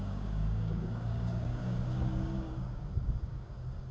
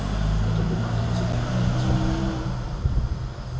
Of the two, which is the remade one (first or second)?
first